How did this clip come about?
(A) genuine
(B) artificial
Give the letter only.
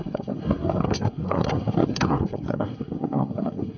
B